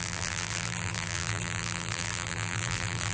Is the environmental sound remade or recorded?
remade